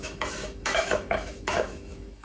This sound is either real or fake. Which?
fake